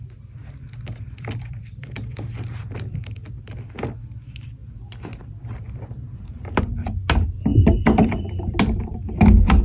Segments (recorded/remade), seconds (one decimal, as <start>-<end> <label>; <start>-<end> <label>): 0.0-0.4 recorded; 0.4-3.1 remade; 3.1-7.5 recorded; 7.5-8.6 remade; 8.6-9.6 recorded